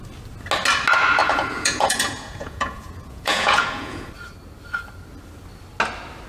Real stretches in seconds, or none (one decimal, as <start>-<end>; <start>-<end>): 0.0-1.2; 4.1-6.3